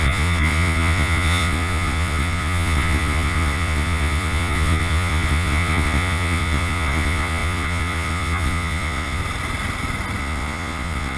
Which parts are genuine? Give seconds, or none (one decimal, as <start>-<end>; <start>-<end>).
9.2-10.2